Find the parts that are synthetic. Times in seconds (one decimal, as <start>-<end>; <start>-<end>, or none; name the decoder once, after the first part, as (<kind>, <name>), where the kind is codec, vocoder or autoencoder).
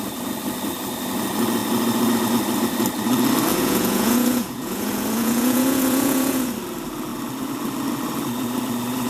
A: 3.5-6.5 (vocoder, Vocos)